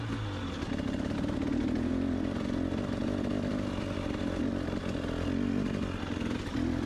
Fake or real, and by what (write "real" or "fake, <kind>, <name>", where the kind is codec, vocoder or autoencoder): real